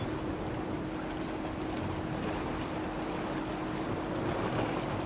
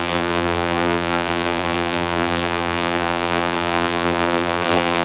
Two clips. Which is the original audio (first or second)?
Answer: first